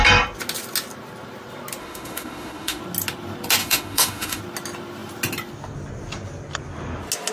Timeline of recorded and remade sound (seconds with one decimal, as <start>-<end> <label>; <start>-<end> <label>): 0.0-1.8 recorded; 1.8-2.8 remade; 2.8-3.6 recorded; 3.6-4.4 remade; 4.4-7.3 recorded

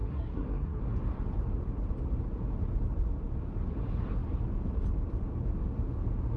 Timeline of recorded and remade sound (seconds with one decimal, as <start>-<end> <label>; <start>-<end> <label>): 0.0-0.8 remade; 0.8-6.4 recorded

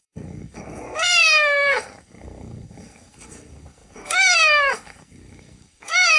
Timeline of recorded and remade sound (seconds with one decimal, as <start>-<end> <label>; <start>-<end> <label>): 0.0-6.2 remade

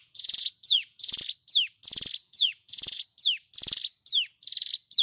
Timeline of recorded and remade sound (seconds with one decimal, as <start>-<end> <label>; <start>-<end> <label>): 0.0-1.2 remade; 1.2-2.2 recorded; 2.2-3.0 remade; 3.0-5.0 recorded